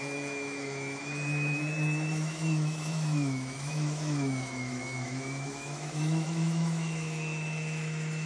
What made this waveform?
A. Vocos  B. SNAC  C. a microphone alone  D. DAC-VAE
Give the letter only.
D